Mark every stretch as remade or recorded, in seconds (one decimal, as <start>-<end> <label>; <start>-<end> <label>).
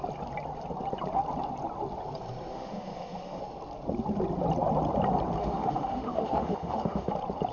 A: 0.0-2.5 recorded; 2.5-3.4 remade; 3.4-5.4 recorded; 5.4-7.1 remade; 7.1-7.5 recorded